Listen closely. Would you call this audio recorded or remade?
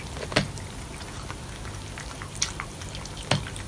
recorded